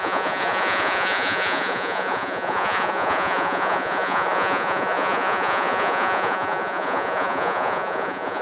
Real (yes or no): no